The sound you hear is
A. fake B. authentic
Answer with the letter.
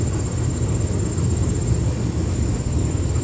B